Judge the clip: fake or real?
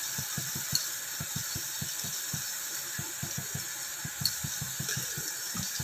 real